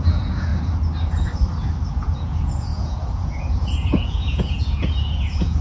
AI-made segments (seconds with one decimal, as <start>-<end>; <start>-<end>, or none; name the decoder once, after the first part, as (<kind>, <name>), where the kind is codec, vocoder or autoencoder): 0.0-0.5 (vocoder, Vocos); 1.9-5.6